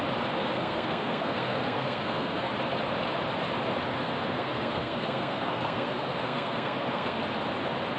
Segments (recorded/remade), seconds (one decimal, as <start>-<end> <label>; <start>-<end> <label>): 0.0-0.4 recorded; 0.4-2.5 remade; 2.5-3.9 recorded; 3.9-7.2 remade; 7.2-8.0 recorded